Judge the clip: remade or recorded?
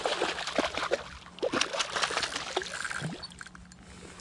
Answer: recorded